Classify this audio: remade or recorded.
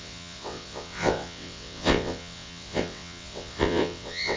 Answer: remade